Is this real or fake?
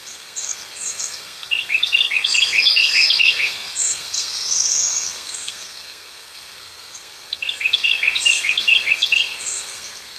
fake